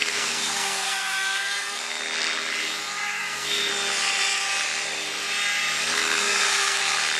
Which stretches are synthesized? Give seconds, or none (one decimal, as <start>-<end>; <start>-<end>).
0.0-2.0; 2.8-3.7; 5.8-6.8